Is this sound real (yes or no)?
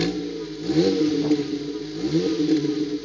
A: yes